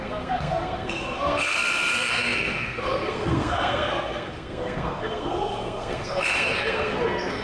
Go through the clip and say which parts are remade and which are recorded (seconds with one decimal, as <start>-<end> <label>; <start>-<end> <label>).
0.0-7.4 remade